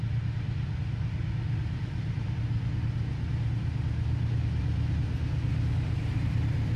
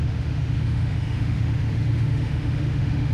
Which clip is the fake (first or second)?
second